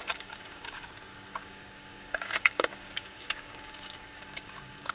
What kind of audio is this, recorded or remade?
remade